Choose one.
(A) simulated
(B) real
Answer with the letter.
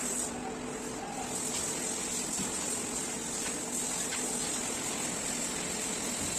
B